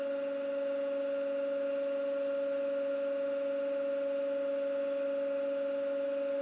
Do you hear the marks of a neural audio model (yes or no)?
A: no